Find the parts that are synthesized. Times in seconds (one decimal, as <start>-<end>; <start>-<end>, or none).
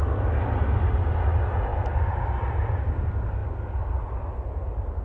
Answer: none